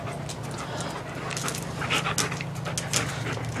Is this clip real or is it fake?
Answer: real